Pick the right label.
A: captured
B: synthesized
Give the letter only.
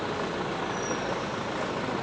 A